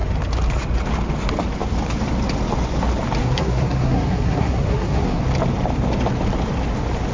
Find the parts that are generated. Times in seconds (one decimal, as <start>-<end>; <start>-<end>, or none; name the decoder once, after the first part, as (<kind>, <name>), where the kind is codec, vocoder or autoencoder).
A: 3.2-5.2 (codec, SNAC)